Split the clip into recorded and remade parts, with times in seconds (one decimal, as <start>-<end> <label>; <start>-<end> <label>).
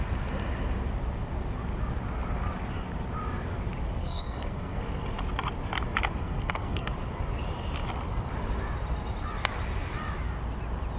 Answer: 0.0-4.0 recorded; 4.0-4.8 remade; 4.8-6.2 recorded; 6.2-6.9 remade; 6.9-11.0 recorded